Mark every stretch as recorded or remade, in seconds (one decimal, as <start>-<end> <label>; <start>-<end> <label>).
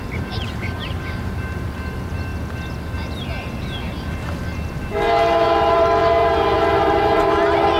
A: 0.0-2.3 remade; 2.3-4.8 recorded; 4.8-7.8 remade